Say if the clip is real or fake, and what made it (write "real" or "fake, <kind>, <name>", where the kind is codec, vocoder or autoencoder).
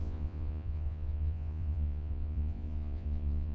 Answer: fake, vocoder, Vocos